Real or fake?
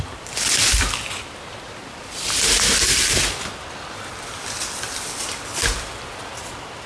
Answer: real